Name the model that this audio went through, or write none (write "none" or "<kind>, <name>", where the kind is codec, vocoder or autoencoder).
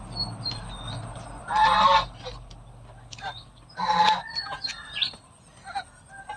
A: none